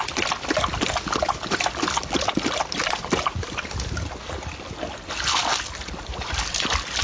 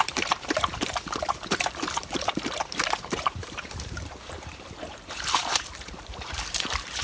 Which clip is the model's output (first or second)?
second